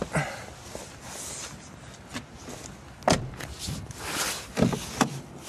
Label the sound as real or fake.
real